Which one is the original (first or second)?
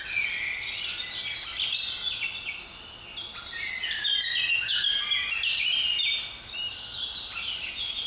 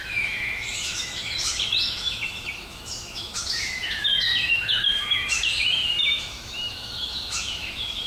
first